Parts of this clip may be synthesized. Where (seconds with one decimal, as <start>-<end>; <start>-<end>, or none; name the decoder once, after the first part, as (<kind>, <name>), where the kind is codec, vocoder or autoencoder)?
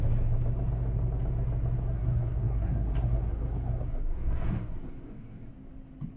1.8-5.5 (codec, SNAC)